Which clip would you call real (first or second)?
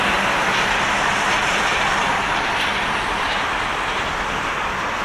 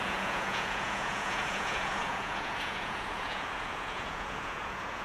first